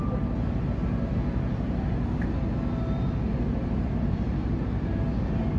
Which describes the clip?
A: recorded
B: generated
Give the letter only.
A